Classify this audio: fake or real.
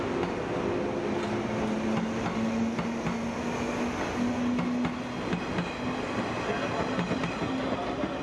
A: real